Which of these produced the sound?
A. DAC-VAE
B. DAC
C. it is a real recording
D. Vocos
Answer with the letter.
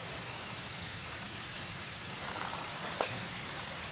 B